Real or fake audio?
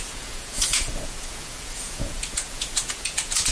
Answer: fake